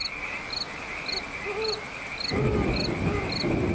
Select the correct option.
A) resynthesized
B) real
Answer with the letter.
B